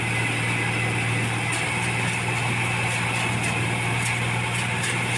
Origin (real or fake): real